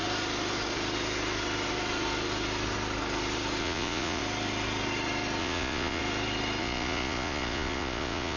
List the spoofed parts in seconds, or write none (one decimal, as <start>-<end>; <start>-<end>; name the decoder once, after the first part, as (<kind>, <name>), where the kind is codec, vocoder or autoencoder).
3.6-4.2 (vocoder, Vocos); 5.4-6.0; 6.6-8.4